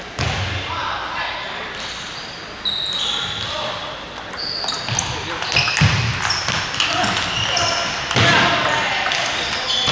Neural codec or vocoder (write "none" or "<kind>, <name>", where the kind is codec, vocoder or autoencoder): none